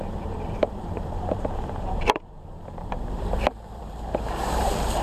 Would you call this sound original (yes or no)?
no